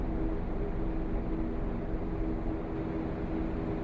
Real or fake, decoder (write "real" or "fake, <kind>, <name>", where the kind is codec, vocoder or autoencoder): real